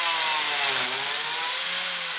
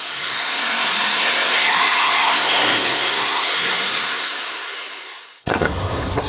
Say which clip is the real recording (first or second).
first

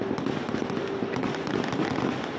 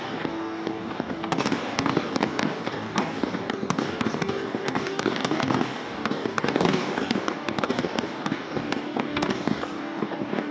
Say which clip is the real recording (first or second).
first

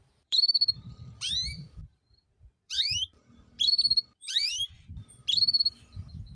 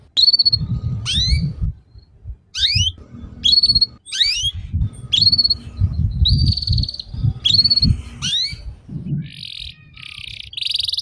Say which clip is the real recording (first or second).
second